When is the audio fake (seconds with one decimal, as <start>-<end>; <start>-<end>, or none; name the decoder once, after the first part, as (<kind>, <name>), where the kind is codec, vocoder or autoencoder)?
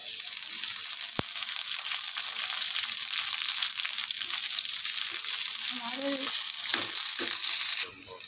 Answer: none